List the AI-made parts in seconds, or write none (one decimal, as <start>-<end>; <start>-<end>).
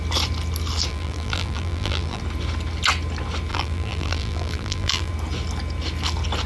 0.9-2.2; 3.5-5.1